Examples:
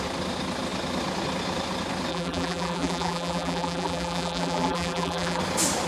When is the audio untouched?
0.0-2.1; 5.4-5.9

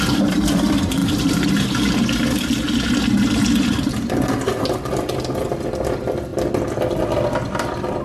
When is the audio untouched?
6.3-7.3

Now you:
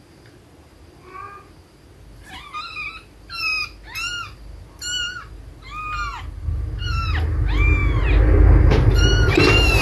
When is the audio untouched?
0.0-6.1; 7.0-7.8; 9.4-9.8